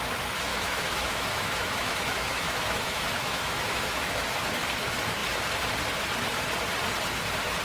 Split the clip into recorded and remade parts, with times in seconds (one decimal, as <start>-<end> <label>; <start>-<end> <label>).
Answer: 0.0-0.5 recorded; 0.5-4.2 remade; 4.2-7.6 recorded